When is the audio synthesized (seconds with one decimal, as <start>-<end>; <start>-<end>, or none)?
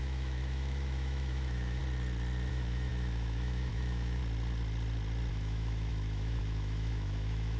0.0-1.8; 2.5-4.2; 5.3-7.6